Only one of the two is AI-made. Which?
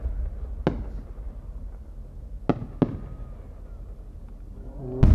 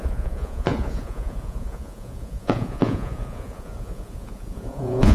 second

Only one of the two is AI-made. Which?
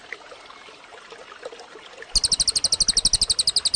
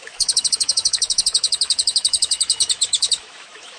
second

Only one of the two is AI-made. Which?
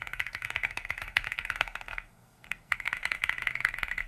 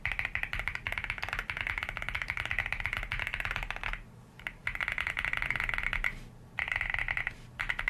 first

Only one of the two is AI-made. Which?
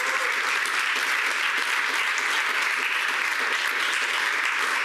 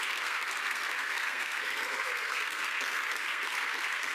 second